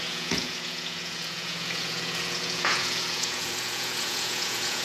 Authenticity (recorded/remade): remade